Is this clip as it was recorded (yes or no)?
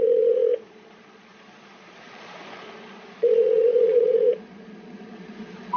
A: no